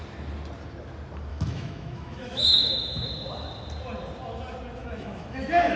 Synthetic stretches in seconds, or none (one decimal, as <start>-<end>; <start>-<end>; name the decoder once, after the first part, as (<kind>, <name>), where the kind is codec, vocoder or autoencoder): 1.3-3.0 (autoencoder, DAC-VAE); 4.8-5.8